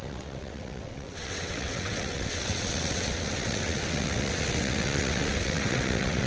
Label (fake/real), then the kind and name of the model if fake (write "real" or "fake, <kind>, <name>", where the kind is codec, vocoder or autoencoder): fake, vocoder, WaveNeXt